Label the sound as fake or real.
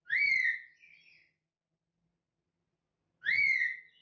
real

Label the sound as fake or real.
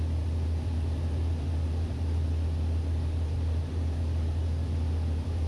real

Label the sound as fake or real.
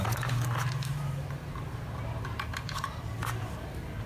fake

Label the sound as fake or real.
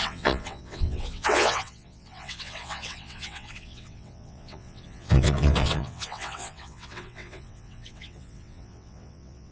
fake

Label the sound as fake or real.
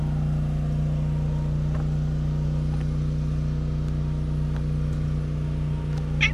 real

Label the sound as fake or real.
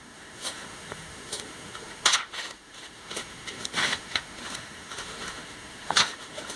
fake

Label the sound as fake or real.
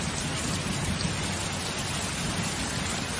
real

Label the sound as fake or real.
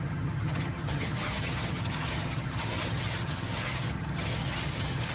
fake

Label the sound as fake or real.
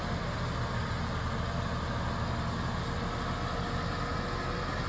real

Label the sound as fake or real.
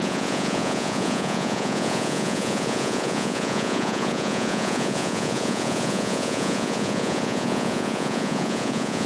fake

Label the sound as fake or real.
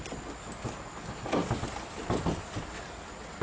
real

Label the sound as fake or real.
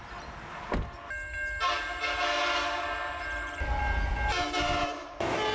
real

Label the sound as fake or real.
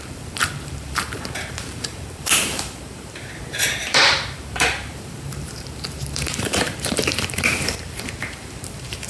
fake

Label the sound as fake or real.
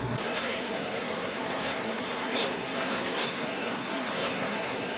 fake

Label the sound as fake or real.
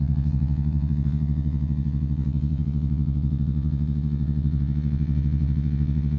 fake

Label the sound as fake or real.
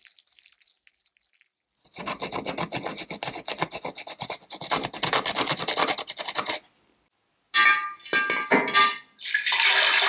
real